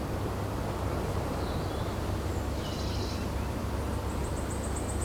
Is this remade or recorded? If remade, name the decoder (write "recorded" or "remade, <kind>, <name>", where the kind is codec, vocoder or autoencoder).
recorded